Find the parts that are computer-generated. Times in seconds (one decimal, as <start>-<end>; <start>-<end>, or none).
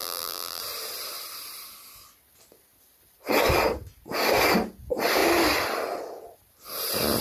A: 0.0-0.6